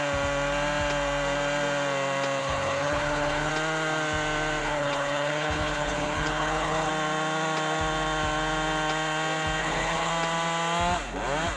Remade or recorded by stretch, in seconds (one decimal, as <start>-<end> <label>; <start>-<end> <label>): 0.0-2.4 recorded; 2.4-3.5 remade; 3.5-4.6 recorded; 4.6-6.9 remade; 6.9-9.6 recorded; 9.6-10.1 remade; 10.1-11.6 recorded